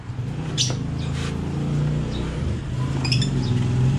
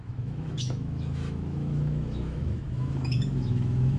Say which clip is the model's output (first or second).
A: second